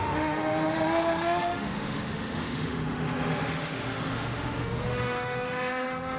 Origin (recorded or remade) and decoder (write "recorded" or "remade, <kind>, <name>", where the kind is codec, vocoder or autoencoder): remade, autoencoder, DAC-VAE